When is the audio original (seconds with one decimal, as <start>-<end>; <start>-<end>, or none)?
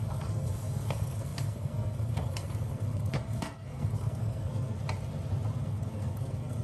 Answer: 4.8-5.6